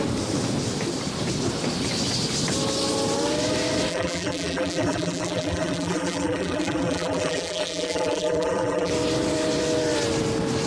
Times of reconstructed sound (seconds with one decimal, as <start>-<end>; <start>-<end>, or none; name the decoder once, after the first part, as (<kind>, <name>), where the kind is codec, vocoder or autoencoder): 3.9-8.9 (vocoder, BigVGAN v2)